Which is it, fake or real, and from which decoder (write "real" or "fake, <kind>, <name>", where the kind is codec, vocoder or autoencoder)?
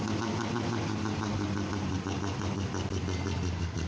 real